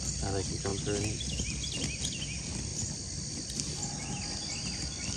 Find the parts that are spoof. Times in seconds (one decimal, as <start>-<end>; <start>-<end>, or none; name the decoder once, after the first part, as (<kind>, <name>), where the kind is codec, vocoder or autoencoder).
none